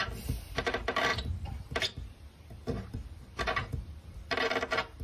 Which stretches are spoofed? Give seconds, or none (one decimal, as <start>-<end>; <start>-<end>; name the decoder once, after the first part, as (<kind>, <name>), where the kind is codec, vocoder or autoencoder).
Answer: 0.0-5.0 (vocoder, BigVGAN v2)